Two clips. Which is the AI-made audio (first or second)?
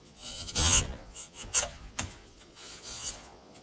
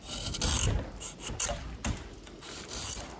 first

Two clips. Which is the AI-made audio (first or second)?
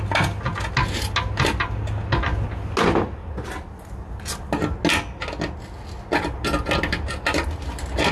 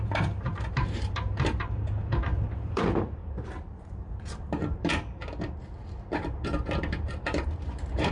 second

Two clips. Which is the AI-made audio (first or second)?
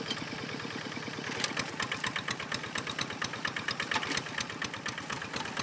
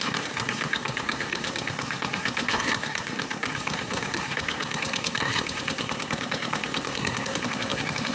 second